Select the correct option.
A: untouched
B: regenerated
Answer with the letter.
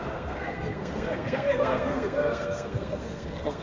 B